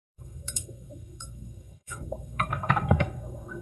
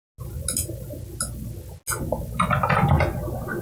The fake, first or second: first